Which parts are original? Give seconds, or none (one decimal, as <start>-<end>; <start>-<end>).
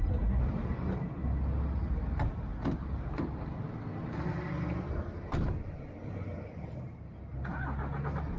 1.2-1.8; 2.5-6.1; 7.3-8.4